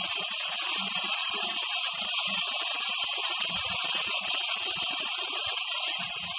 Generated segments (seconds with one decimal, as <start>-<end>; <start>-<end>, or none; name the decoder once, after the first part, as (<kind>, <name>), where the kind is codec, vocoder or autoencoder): none